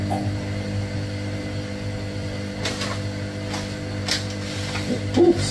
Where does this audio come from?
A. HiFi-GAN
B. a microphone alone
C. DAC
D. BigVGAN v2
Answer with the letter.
B